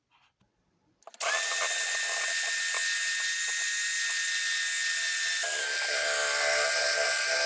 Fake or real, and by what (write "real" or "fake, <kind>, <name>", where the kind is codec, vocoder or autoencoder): real